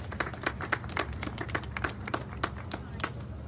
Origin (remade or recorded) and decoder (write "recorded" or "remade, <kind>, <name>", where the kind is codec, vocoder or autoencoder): recorded